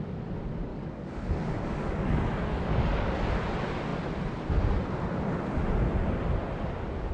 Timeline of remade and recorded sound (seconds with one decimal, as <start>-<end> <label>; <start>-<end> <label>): 0.0-0.7 recorded; 0.7-3.2 remade; 3.2-7.1 recorded